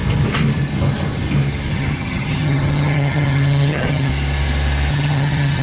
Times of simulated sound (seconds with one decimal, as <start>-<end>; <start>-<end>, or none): 1.7-4.1; 4.9-5.6